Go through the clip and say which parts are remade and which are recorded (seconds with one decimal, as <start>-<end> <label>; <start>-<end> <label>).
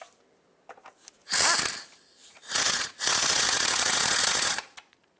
0.0-2.2 recorded; 2.2-5.2 remade